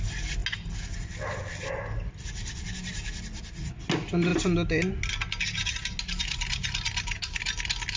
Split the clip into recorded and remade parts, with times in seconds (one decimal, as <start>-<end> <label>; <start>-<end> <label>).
0.0-8.0 recorded